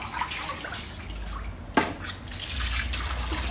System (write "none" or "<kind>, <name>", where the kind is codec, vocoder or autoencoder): none